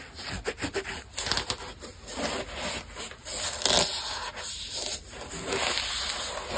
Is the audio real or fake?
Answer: real